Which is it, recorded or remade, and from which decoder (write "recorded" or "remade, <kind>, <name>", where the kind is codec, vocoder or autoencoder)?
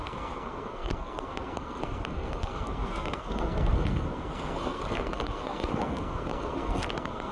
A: remade, codec, SNAC